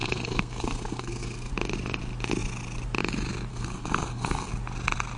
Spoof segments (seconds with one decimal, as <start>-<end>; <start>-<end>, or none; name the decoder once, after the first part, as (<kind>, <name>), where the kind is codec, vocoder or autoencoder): 0.0-1.5 (codec, SNAC); 3.5-4.5